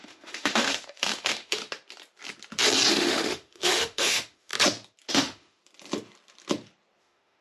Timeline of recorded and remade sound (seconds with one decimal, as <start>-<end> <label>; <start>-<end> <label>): 0.0-1.6 remade; 1.6-2.9 recorded; 2.9-4.5 remade; 4.5-5.1 recorded; 5.1-5.6 remade; 5.6-7.0 recorded; 7.0-7.4 remade